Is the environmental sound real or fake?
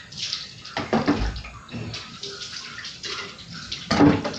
real